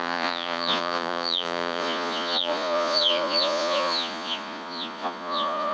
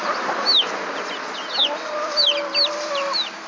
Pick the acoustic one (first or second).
second